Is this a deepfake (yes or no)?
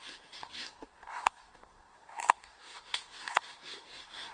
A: yes